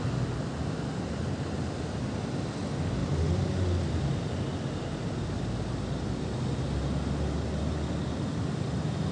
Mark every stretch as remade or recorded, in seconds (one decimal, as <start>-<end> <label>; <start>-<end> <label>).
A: 0.0-9.1 recorded